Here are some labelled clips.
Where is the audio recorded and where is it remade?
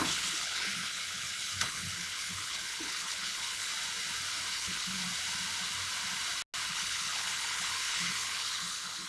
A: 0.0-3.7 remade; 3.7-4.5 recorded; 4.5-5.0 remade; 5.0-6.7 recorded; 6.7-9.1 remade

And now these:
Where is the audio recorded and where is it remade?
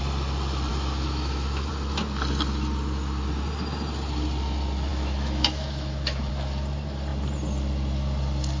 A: 0.0-0.7 recorded; 0.7-1.7 remade; 1.7-4.9 recorded; 4.9-6.3 remade; 6.3-8.6 recorded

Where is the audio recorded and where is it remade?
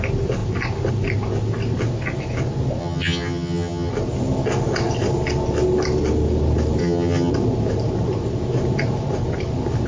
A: 0.0-2.8 recorded; 2.8-3.9 remade; 3.9-6.8 recorded; 6.8-7.3 remade; 7.3-9.9 recorded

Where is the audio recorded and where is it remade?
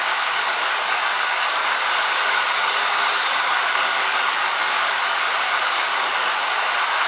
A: 0.0-7.1 remade